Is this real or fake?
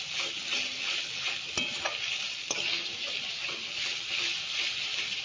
real